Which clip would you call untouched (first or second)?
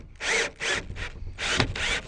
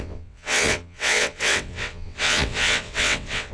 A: first